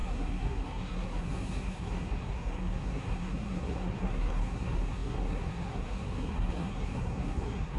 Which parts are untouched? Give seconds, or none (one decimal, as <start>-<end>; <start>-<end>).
none